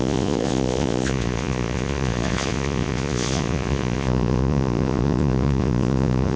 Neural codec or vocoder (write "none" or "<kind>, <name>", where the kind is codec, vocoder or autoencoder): vocoder, Vocos